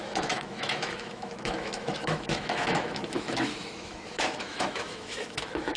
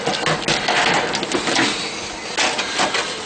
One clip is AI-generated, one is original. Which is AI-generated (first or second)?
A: first